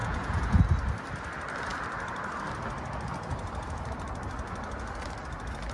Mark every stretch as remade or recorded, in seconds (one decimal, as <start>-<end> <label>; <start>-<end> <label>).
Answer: 0.0-0.6 remade; 0.6-5.7 recorded